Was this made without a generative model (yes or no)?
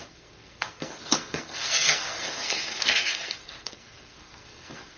no